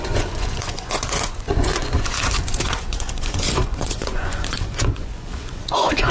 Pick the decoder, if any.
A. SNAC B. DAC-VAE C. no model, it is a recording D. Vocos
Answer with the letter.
D